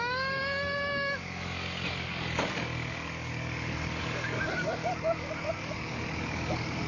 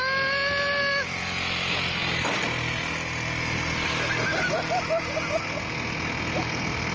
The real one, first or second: second